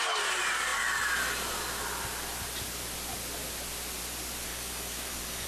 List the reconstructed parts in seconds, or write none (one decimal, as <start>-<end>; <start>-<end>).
4.5-5.5